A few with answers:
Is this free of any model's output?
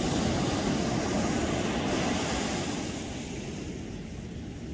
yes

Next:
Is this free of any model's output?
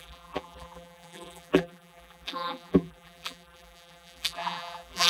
no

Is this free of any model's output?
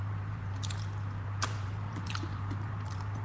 no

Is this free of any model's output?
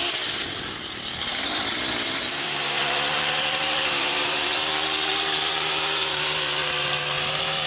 no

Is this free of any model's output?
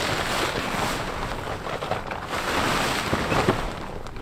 yes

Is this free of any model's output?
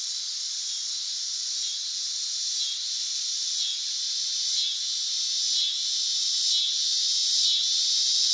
no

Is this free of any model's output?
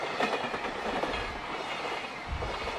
yes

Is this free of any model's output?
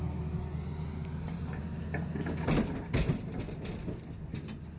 yes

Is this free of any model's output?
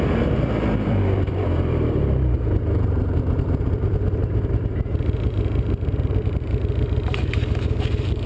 no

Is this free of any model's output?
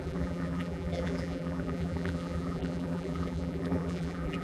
no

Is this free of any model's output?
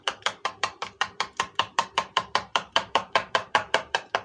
no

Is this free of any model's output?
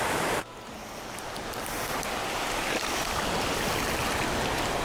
no